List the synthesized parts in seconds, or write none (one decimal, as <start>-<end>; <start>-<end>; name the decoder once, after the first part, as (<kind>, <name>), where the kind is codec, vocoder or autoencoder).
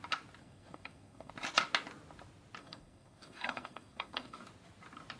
0.4-1.3 (codec, SNAC); 2.6-4.4